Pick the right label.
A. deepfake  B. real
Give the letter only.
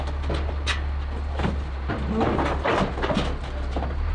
B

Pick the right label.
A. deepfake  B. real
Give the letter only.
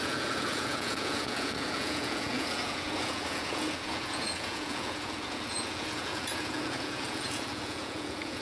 A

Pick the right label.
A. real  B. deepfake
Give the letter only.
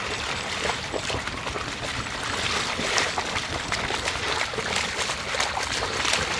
A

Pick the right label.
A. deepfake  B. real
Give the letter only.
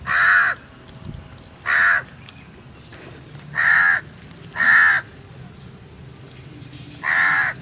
B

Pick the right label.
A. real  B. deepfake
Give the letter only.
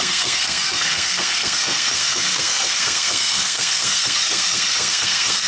B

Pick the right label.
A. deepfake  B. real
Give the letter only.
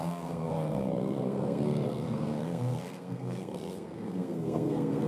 A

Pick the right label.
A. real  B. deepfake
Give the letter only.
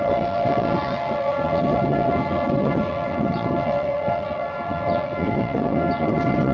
B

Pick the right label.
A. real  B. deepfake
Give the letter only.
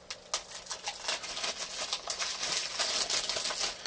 A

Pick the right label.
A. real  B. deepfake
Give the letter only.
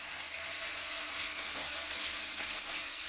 B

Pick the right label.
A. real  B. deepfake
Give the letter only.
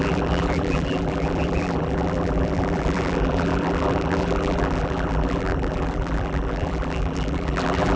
B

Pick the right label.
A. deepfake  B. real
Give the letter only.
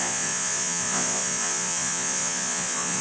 A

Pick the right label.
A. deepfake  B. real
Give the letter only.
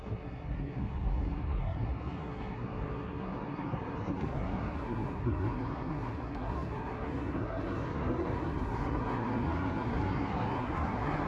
A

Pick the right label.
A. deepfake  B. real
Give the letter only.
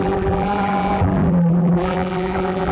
A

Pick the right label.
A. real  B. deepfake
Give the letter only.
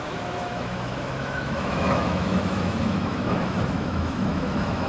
B